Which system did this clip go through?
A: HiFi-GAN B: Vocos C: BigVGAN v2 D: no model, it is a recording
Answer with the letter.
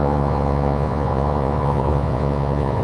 B